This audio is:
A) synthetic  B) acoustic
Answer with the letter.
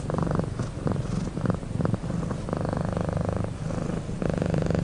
B